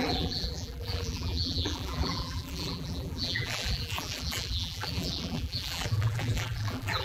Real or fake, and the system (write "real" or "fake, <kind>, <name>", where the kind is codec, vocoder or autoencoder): fake, vocoder, BigVGAN v2